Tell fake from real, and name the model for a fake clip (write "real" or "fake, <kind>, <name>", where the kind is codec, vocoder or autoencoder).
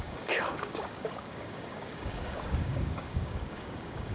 fake, codec, DAC